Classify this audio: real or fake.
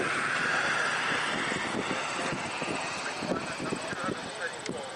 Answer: real